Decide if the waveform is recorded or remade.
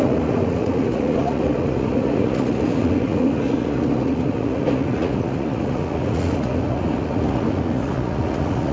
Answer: remade